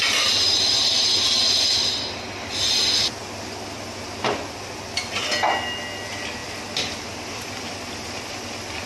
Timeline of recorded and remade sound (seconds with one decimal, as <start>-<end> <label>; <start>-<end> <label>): 0.0-8.9 recorded